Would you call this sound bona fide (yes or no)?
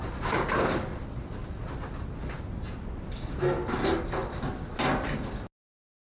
yes